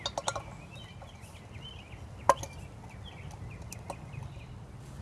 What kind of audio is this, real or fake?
real